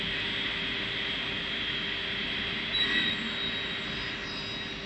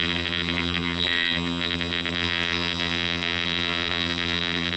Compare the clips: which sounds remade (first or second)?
second